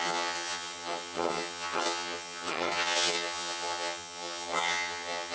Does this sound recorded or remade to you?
remade